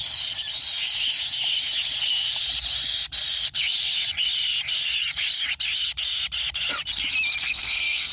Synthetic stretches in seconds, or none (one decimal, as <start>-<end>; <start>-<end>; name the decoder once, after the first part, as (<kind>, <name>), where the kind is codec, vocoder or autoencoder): 7.4-8.1 (codec, SNAC)

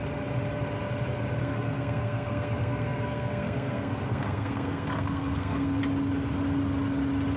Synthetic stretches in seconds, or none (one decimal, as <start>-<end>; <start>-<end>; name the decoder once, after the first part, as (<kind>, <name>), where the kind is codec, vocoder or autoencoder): 1.4-5.8 (codec, SNAC)

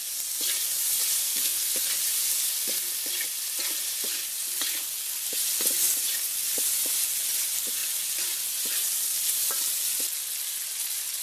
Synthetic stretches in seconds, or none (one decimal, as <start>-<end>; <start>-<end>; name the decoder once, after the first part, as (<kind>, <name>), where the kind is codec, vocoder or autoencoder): 1.2-1.7 (codec, SNAC)